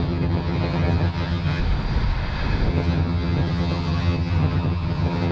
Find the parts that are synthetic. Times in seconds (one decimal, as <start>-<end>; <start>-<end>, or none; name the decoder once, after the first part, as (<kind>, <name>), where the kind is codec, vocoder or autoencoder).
0.0-1.6 (vocoder, HiFi-GAN); 2.7-5.3